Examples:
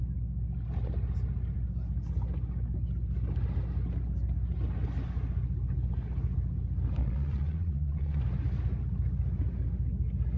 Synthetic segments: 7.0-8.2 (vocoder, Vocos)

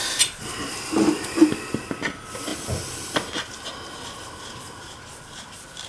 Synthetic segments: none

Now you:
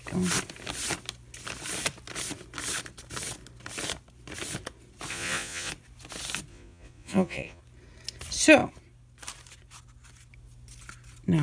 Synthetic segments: 5.1-5.7 (vocoder, Vocos); 6.5-7.6

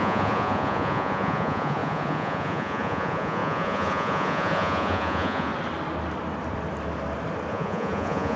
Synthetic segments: 0.0-5.5 (vocoder, Vocos); 7.5-8.4

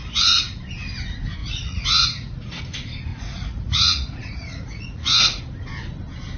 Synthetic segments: 0.0-0.6 (vocoder, Vocos); 1.4-2.6; 3.1-5.4

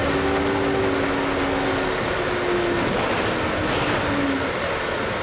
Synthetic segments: none

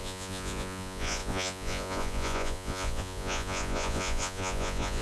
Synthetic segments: 0.0-5.0 (vocoder, Vocos)